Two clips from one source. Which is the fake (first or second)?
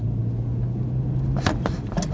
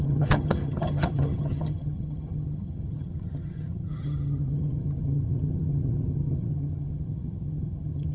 second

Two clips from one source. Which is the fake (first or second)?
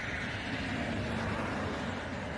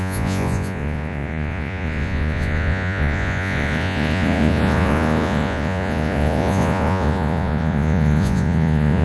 second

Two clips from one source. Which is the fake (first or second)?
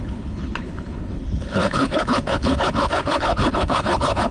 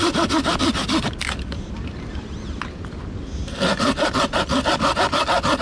first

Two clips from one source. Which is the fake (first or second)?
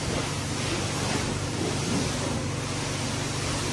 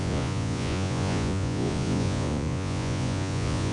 second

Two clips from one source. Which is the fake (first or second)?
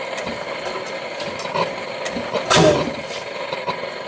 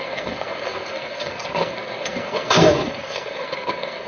second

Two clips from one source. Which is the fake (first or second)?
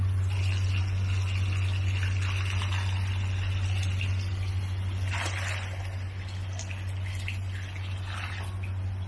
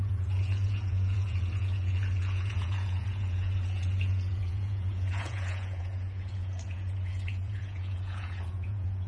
second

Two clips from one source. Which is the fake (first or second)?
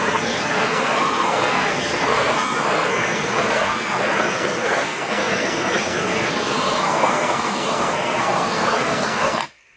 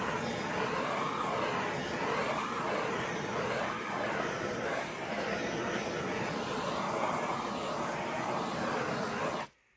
first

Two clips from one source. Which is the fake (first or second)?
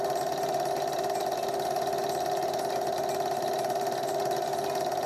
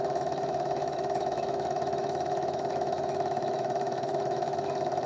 second